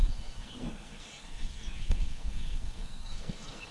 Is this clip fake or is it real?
fake